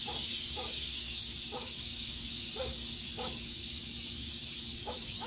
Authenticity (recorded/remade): remade